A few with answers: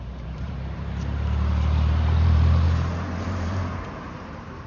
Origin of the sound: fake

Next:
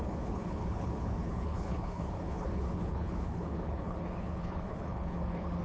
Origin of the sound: fake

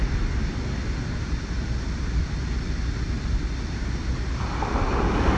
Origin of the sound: real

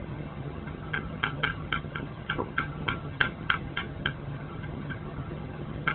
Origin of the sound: fake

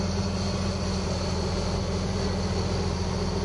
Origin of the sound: real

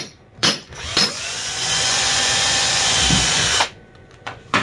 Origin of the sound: fake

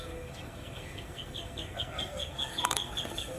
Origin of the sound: fake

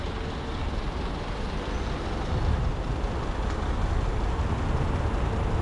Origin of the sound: real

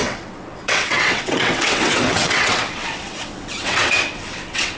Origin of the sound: fake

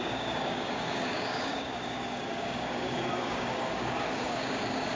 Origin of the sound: fake